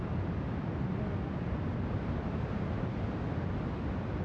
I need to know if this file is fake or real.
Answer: real